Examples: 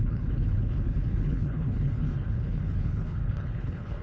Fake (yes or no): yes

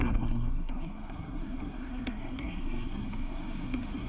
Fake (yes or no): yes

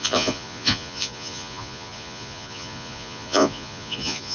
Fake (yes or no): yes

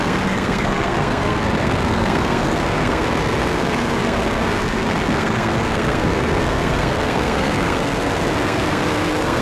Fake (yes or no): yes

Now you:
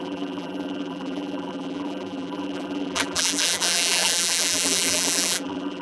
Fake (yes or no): yes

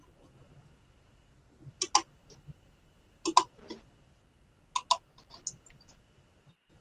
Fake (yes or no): no